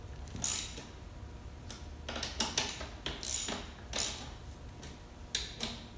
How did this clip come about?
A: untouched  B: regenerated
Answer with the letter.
A